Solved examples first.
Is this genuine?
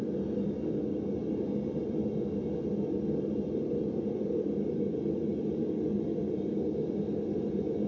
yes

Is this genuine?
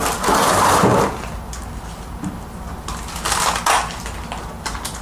yes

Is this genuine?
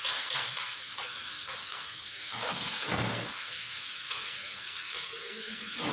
no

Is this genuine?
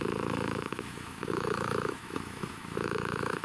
no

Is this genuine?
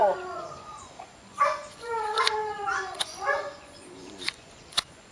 no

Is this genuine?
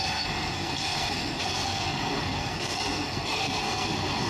no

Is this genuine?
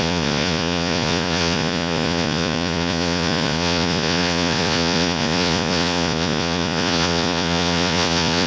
no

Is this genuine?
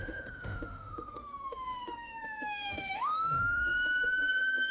no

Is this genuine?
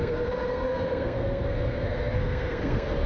no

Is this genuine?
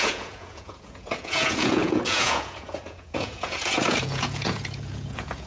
no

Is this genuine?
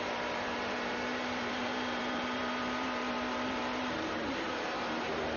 no